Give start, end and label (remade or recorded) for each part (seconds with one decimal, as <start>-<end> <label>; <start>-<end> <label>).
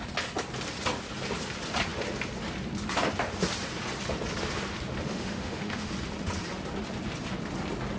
0.0-5.1 recorded; 5.1-5.9 remade; 5.9-8.0 recorded